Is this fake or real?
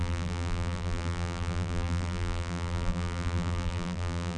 fake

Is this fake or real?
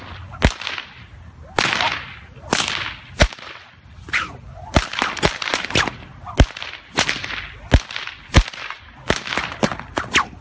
real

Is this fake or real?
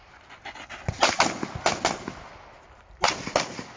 real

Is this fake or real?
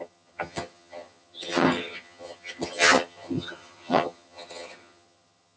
fake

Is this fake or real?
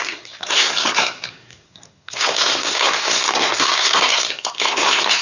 fake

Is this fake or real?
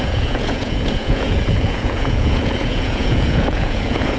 fake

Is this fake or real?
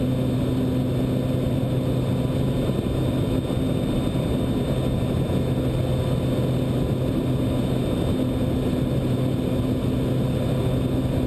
real